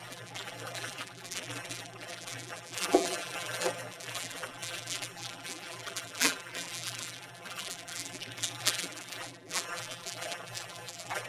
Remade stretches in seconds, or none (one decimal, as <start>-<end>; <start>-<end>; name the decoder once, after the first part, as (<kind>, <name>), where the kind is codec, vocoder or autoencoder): 0.0-11.3 (vocoder, BigVGAN v2)